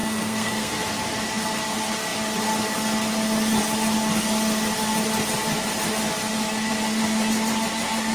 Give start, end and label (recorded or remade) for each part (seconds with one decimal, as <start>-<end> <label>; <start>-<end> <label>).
0.0-0.7 remade; 0.7-8.1 recorded